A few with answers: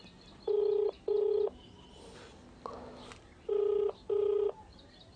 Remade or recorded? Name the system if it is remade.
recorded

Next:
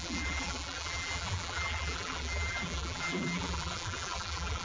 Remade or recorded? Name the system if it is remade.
remade, vocoder, BigVGAN v2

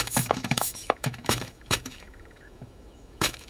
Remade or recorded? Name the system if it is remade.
remade, autoencoder, DAC-VAE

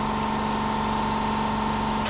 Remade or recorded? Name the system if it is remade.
recorded